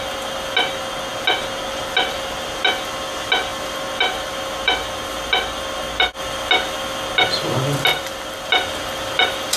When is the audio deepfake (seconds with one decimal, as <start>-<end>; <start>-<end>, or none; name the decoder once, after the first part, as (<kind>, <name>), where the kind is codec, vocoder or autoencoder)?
3.5-5.1 (vocoder, BigVGAN v2); 7.9-8.5

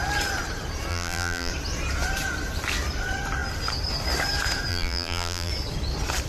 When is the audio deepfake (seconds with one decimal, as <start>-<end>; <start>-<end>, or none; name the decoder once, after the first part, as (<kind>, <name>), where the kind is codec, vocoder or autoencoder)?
0.9-1.5 (vocoder, BigVGAN v2); 4.7-5.5

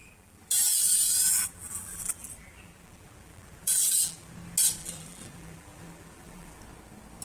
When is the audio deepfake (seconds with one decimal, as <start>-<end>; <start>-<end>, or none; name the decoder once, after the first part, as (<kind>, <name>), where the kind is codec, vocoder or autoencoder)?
0.0-4.3 (vocoder, BigVGAN v2); 4.8-6.6